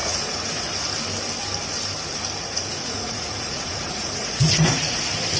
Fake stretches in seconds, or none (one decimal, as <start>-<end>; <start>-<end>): 0.0-0.7; 2.4-5.0